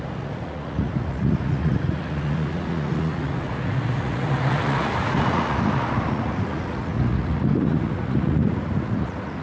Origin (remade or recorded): remade